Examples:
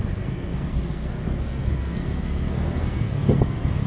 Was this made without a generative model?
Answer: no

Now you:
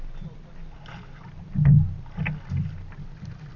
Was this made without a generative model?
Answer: yes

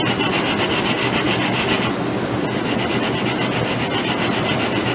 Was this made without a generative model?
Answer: yes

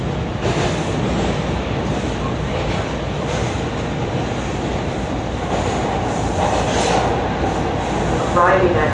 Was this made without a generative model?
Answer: yes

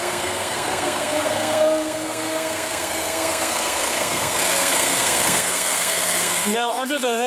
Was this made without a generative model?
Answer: no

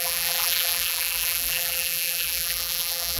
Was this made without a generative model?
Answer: no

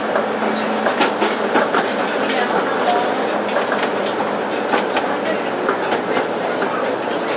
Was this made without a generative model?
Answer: yes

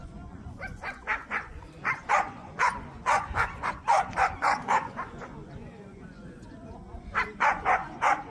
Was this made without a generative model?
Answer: no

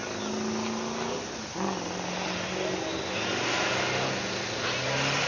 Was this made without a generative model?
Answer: yes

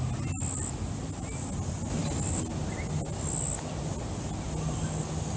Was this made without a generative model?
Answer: yes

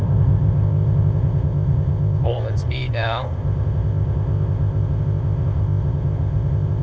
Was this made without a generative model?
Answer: no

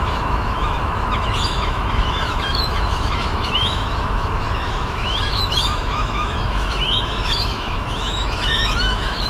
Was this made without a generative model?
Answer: no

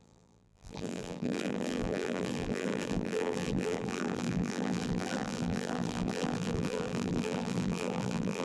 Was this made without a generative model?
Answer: no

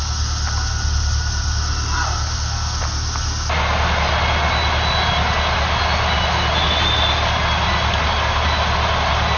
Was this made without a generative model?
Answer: yes